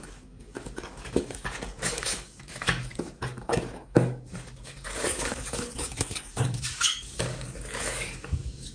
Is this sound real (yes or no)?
no